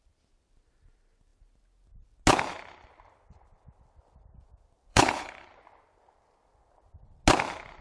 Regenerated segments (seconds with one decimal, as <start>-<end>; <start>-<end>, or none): 4.9-5.5